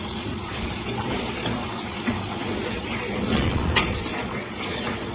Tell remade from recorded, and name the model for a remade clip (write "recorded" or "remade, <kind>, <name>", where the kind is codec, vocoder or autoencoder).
remade, vocoder, Vocos